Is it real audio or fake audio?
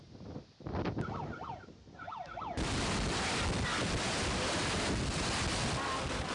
real